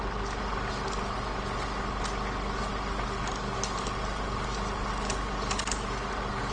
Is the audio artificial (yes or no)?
no